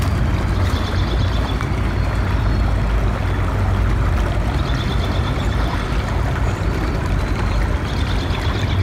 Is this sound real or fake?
real